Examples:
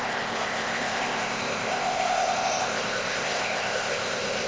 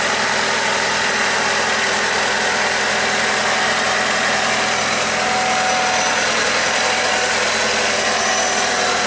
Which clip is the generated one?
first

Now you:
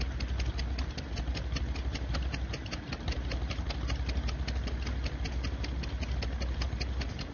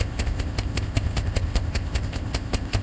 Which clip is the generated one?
second